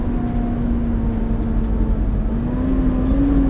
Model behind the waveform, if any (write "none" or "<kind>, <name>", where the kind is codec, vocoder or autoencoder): none